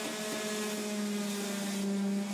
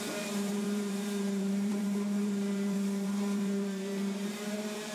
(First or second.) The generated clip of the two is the second